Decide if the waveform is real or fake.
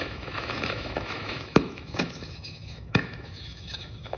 fake